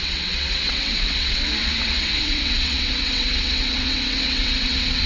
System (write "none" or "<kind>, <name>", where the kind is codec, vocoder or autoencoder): vocoder, WaveNeXt